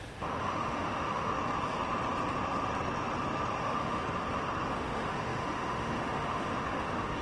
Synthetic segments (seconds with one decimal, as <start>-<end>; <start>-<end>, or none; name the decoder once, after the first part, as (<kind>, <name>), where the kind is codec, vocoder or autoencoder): 0.0-1.3 (autoencoder, DAC-VAE); 3.6-4.0; 4.7-7.2